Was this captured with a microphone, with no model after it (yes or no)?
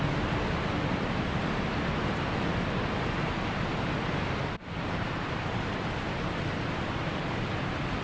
yes